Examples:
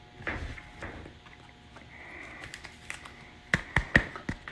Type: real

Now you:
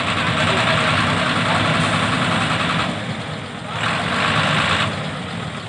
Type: real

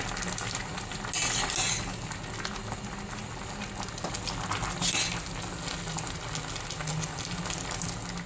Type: real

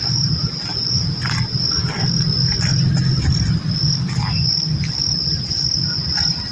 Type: real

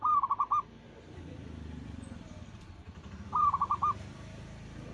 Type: fake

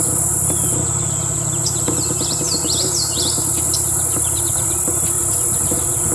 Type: real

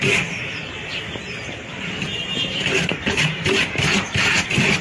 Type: fake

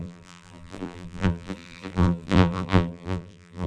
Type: fake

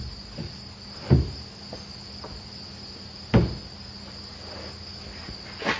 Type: real